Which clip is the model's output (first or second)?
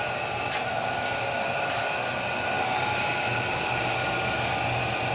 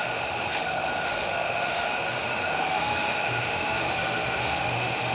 second